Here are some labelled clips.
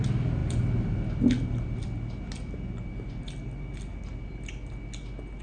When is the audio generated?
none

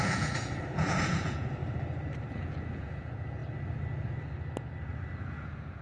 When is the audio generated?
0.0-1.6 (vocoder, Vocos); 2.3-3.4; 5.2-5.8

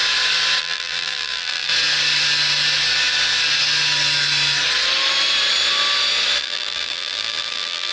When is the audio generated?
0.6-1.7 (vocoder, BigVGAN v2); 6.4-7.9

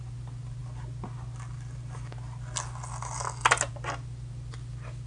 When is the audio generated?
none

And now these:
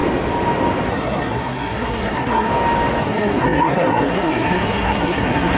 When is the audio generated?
0.9-2.5 (codec, SNAC); 3.0-5.6

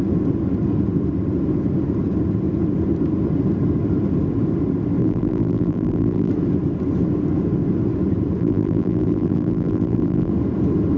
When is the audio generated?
5.0-6.3 (vocoder, BigVGAN v2); 8.4-10.3